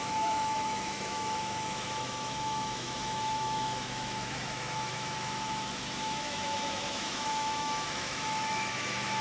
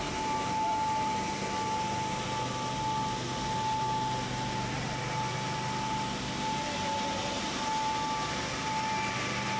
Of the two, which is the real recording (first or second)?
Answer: second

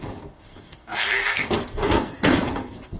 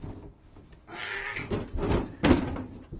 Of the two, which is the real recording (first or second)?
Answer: second